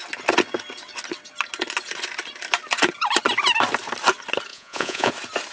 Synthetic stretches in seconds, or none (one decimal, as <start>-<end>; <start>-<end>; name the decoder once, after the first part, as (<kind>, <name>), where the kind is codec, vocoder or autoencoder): 4.5-5.1 (vocoder, Vocos)